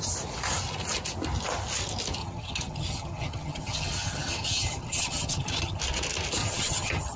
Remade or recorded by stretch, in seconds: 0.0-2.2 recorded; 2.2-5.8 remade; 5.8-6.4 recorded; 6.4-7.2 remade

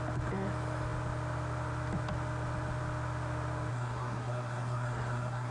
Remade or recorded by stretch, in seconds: 0.0-3.7 recorded; 3.7-5.5 remade

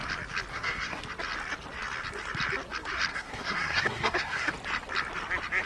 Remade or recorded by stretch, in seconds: 0.0-0.5 recorded; 0.5-1.0 remade; 1.0-3.1 recorded; 3.1-4.5 remade; 4.5-5.7 recorded

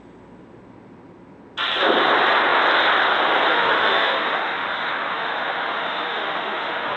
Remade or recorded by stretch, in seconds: 0.0-3.5 recorded; 3.5-7.0 remade

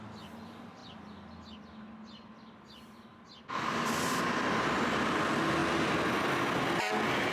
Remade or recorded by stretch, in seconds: 0.0-7.3 recorded

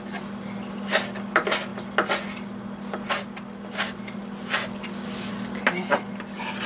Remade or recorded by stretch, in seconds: 0.0-6.7 recorded

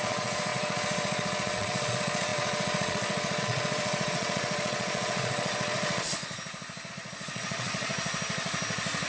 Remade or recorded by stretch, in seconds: 0.0-6.2 remade; 6.2-6.9 recorded; 6.9-7.9 remade; 7.9-9.1 recorded

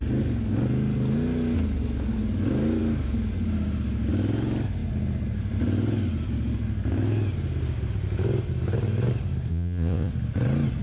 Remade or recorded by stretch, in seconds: 0.0-9.5 recorded; 9.5-10.1 remade; 10.1-10.8 recorded